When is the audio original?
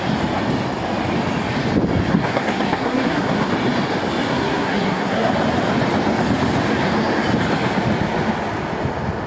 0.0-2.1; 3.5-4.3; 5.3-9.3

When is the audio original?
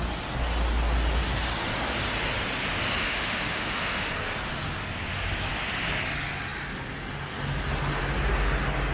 0.0-3.0; 4.1-8.9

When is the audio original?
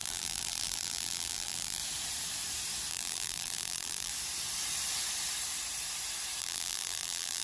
1.8-2.9; 4.1-6.4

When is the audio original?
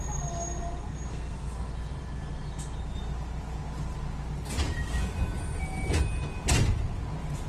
0.0-1.1; 1.7-7.5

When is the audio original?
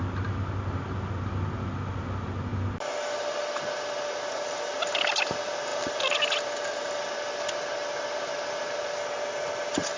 0.0-10.0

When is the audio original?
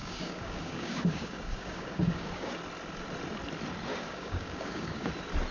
2.6-3.9; 5.1-5.5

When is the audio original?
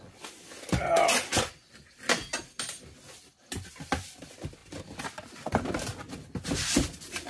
0.0-7.3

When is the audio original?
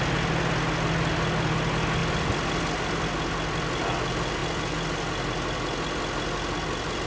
0.0-7.1